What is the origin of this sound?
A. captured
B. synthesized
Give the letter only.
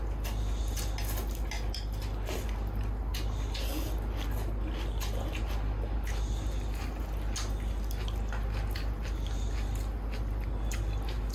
A